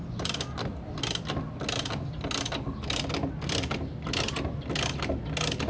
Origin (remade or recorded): recorded